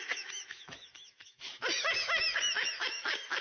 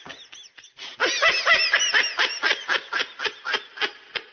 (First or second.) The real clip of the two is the second